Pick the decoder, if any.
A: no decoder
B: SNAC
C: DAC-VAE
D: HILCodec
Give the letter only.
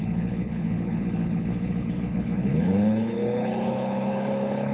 D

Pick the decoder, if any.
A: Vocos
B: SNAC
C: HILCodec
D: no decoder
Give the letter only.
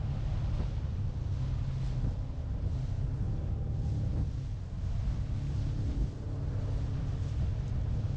D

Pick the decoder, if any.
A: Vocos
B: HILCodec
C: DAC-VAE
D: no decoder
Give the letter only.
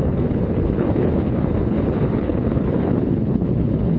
B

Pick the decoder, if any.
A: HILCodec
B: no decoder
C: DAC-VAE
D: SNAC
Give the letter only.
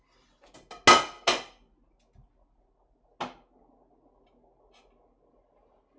B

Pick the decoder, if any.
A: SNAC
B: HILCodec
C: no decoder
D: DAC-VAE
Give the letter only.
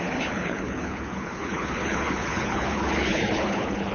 B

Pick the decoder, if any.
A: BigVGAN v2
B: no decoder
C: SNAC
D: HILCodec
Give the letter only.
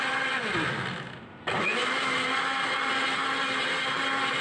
B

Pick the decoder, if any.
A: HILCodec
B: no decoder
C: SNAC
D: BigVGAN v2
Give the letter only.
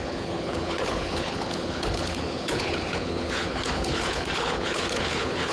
A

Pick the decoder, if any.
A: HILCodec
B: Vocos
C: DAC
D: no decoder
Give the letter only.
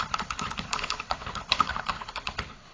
A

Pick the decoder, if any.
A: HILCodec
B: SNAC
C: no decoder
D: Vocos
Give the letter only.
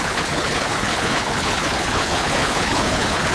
A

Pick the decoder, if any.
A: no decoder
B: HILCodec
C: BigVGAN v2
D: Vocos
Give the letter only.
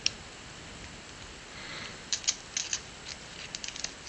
A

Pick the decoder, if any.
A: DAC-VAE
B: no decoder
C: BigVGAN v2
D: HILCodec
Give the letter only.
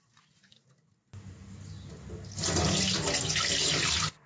B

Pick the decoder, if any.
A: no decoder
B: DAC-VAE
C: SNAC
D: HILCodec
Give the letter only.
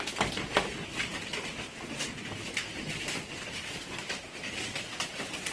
A